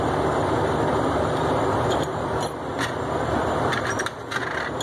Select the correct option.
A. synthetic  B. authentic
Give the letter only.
B